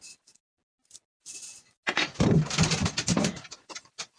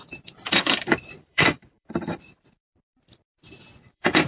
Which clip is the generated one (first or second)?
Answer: second